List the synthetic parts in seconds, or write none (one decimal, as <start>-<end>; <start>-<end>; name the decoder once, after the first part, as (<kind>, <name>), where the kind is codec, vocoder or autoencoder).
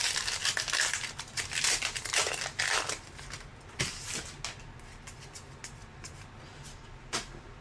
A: none